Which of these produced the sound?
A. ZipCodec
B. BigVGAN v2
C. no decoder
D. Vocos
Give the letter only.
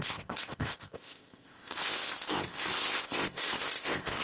A